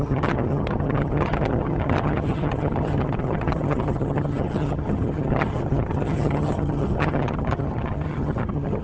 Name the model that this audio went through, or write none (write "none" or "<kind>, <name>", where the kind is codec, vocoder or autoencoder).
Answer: vocoder, HiFi-GAN